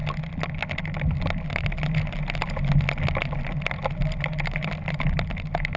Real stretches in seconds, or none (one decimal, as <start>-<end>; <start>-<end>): 0.0-5.8